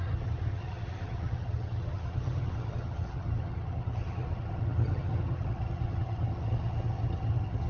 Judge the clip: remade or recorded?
remade